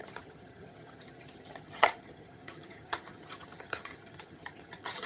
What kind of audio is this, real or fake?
fake